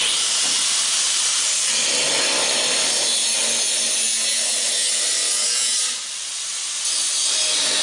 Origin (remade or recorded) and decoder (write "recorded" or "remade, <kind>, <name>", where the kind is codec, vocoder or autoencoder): recorded